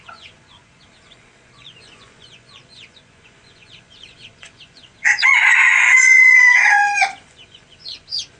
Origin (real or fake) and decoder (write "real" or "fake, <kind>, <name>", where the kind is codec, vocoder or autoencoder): fake, vocoder, Vocos